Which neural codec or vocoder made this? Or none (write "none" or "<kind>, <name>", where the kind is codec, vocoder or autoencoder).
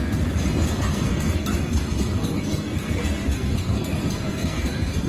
codec, SNAC